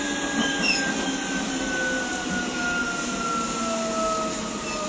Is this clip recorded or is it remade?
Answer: recorded